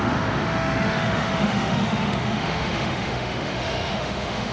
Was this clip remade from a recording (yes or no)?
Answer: yes